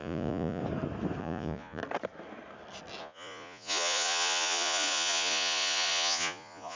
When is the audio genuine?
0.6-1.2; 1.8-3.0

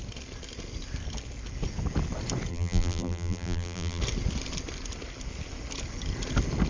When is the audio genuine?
0.0-2.5; 4.0-6.7

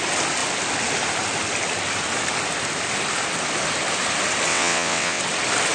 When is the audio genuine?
0.0-4.5; 5.2-5.7